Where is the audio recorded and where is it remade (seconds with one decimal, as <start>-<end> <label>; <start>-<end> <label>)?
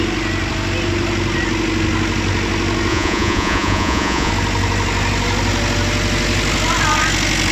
0.0-2.9 recorded; 2.9-4.3 remade; 4.3-7.5 recorded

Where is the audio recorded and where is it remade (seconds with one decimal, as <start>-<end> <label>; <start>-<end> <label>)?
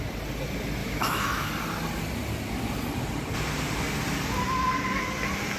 0.0-0.8 recorded; 0.8-1.5 remade; 1.5-5.6 recorded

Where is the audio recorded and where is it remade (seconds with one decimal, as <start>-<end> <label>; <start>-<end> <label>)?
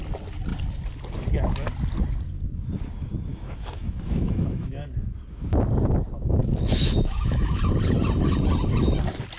0.0-3.3 recorded; 3.3-4.7 remade; 4.7-6.4 recorded; 6.4-7.6 remade; 7.6-9.4 recorded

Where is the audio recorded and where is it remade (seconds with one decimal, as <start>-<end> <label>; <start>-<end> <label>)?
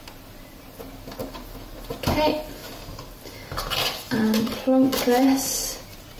0.0-6.2 recorded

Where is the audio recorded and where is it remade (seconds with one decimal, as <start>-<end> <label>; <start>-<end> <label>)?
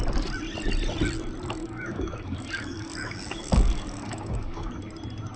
0.0-1.6 recorded; 1.6-4.8 remade; 4.8-5.4 recorded